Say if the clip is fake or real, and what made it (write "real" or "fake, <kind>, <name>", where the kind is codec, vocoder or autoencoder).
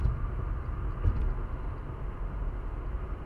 real